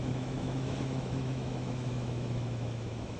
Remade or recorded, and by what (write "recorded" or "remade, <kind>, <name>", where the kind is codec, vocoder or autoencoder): remade, autoencoder, DAC-VAE